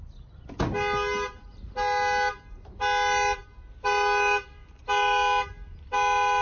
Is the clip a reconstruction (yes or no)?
no